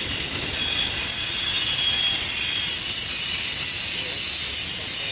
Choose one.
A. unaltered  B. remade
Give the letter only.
A